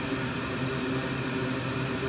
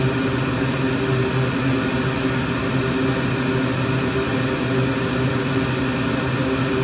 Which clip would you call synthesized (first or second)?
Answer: first